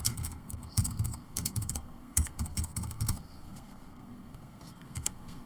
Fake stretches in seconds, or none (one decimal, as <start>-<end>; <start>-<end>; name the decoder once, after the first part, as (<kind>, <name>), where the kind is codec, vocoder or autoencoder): 0.0-5.5 (codec, SNAC)